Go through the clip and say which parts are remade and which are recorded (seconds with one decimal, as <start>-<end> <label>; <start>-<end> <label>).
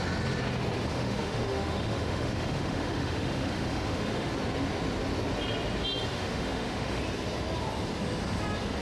0.0-0.9 recorded; 0.9-4.3 remade; 4.3-6.1 recorded; 6.1-7.0 remade; 7.0-8.8 recorded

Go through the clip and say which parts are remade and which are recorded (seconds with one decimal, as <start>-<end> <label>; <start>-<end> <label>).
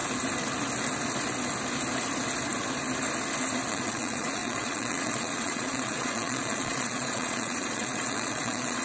0.0-3.7 recorded; 3.7-8.8 remade